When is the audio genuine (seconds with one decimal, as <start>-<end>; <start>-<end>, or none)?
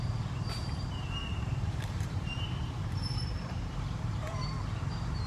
0.0-1.3; 4.5-5.3